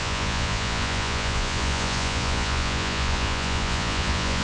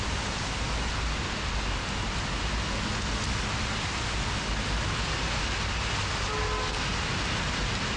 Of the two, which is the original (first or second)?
second